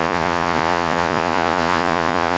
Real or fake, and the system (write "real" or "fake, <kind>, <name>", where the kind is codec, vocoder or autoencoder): fake, vocoder, Vocos